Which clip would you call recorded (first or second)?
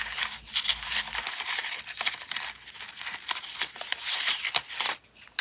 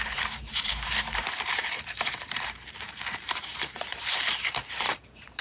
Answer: first